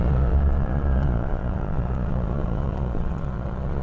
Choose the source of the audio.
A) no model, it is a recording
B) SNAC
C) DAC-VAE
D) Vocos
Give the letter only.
D